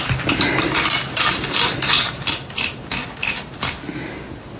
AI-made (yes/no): no